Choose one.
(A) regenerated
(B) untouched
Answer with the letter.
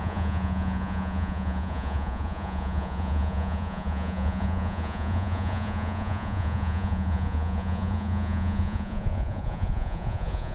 A